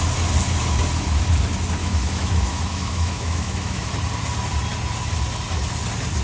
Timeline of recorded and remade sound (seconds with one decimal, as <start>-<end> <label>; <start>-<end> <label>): 0.0-1.8 recorded; 1.8-3.9 remade; 3.9-6.2 recorded